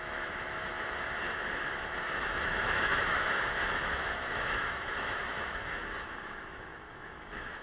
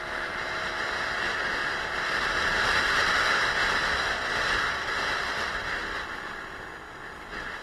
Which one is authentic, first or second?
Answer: second